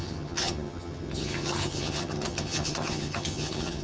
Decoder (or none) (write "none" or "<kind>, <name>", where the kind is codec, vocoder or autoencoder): vocoder, HiFi-GAN